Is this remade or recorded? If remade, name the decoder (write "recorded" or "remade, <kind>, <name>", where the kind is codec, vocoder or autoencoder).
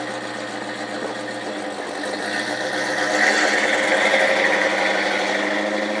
recorded